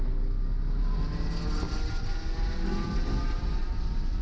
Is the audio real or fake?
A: real